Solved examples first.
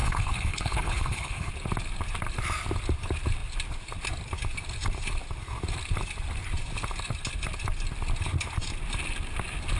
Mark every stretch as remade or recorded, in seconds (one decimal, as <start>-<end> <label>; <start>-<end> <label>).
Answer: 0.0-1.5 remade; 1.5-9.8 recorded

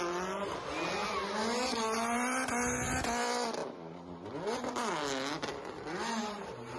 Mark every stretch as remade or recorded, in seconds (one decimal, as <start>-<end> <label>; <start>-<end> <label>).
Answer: 0.0-6.8 recorded

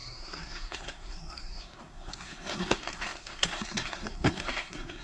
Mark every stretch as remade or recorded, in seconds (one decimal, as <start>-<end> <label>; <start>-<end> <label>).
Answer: 0.0-5.0 remade

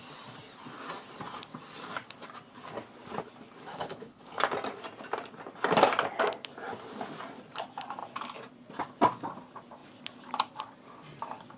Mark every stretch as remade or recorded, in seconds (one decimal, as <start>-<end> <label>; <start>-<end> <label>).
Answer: 0.0-3.7 recorded; 3.7-4.2 remade; 4.2-11.6 recorded